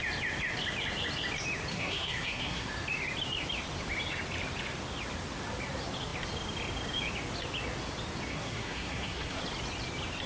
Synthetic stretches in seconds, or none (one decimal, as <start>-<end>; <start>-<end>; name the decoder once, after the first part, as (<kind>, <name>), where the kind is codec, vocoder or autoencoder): 1.7-2.7 (codec, SNAC); 8.3-9.4